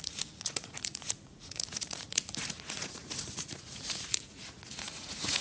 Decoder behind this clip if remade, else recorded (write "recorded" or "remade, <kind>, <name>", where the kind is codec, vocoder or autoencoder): remade, vocoder, Vocos